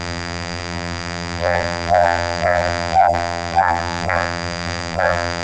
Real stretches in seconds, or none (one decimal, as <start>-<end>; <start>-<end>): none

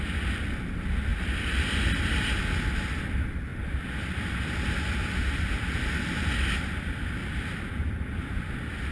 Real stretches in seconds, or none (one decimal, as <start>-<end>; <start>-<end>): 0.0-1.1; 2.3-3.5; 4.2-7.2; 8.2-8.9

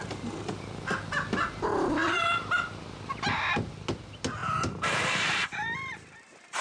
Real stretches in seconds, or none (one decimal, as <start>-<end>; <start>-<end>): 0.0-2.1; 3.4-4.4; 5.4-5.9

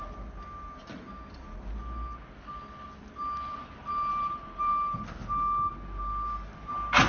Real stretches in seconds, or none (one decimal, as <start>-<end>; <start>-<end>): 0.0-4.1; 4.7-7.1

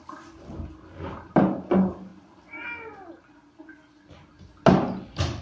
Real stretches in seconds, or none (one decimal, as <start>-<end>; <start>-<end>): 0.7-5.4